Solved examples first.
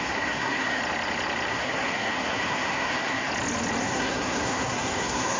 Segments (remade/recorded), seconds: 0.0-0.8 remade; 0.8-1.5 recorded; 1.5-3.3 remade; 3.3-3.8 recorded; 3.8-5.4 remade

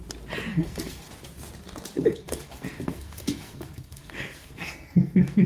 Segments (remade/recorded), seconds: 0.0-0.5 recorded; 0.5-1.1 remade; 1.1-2.0 recorded; 2.0-5.5 remade

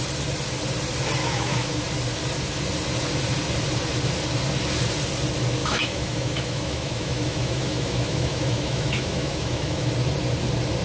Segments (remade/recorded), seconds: 0.0-1.2 recorded; 1.2-1.8 remade; 1.8-5.6 recorded; 5.6-9.9 remade; 9.9-10.8 recorded

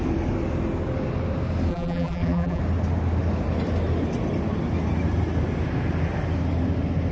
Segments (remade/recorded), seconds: 0.0-1.7 recorded; 1.7-2.6 remade; 2.6-7.1 recorded